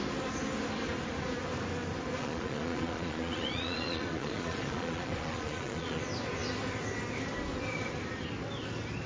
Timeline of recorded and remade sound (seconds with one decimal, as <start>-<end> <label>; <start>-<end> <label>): 0.0-2.2 recorded; 2.2-6.0 remade; 6.0-9.1 recorded